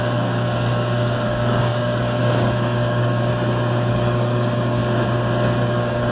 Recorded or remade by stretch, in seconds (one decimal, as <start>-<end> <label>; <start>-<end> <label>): 0.0-3.3 remade; 3.3-3.9 recorded; 3.9-4.8 remade; 4.8-5.6 recorded; 5.6-6.1 remade